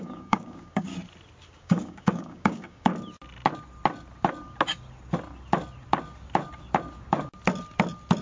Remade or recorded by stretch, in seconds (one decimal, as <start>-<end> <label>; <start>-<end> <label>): 0.0-0.9 remade; 0.9-1.5 recorded; 1.5-2.9 remade; 2.9-8.2 recorded